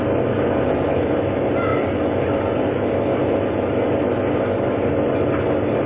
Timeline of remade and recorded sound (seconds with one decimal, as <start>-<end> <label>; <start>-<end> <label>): 0.0-5.9 recorded